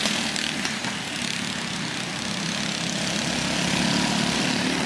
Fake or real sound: real